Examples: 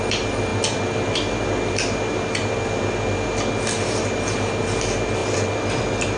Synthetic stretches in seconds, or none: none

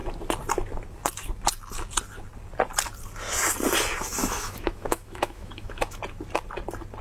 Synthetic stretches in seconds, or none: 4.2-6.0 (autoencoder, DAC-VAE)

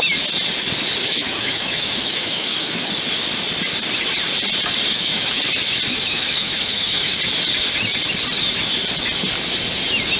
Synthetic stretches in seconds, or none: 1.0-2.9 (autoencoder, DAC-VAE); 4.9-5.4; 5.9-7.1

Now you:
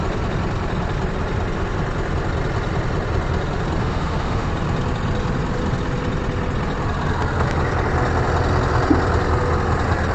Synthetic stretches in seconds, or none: 3.8-4.5 (autoencoder, DAC-VAE)